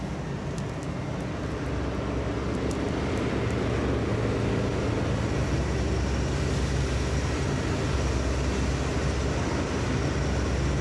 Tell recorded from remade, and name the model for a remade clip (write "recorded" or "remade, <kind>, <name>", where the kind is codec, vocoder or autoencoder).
recorded